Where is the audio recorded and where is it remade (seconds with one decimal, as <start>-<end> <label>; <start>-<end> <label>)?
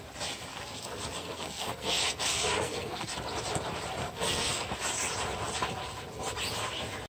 0.0-0.5 recorded; 0.5-3.1 remade; 3.1-4.0 recorded; 4.0-4.7 remade; 4.7-7.1 recorded